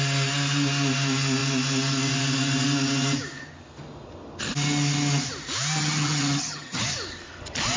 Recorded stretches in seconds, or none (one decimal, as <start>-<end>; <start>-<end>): 0.0-5.8; 6.8-7.8